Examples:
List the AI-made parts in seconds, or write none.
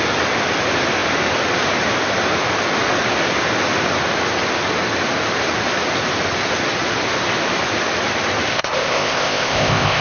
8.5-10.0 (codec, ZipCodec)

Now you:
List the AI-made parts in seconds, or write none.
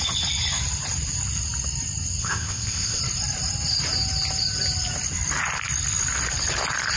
2.2-3.0 (codec, ZipCodec)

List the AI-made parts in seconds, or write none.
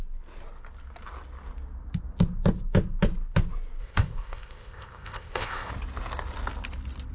3.8-5.7 (codec, ZipCodec)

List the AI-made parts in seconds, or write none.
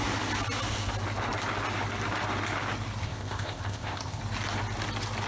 3.0-4.2 (codec, ZipCodec)